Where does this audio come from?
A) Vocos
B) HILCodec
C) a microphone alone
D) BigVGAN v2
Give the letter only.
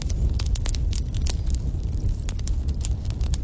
C